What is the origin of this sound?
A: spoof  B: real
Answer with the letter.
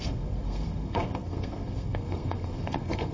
A